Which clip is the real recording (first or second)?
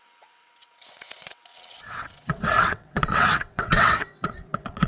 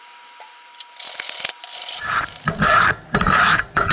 second